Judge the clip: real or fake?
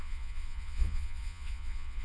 fake